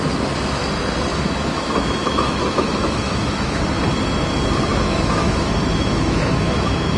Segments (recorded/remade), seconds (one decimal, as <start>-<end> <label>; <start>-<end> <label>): 0.0-1.1 recorded; 1.1-3.6 remade; 3.6-4.7 recorded; 4.7-7.0 remade